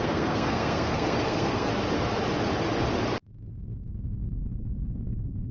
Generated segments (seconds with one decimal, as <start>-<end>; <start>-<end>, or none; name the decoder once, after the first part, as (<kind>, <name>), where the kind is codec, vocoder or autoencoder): 0.0-1.7 (codec, SNAC); 5.0-5.5